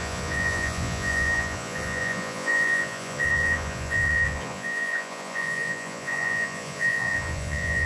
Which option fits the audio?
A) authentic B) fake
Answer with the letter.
B